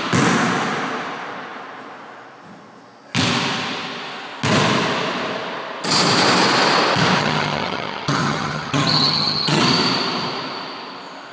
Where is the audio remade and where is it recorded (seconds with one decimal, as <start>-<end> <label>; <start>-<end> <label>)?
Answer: 0.0-7.2 recorded; 7.2-9.6 remade; 9.6-11.3 recorded